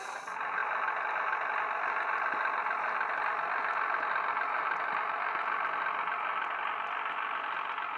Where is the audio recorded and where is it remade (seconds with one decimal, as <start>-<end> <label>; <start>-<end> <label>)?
0.0-8.0 recorded